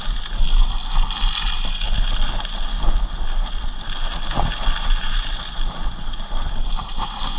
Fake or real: real